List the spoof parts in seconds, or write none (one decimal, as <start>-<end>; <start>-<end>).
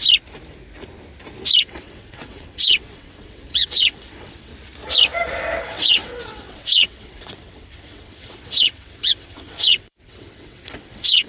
1.6-4.5; 5.6-11.3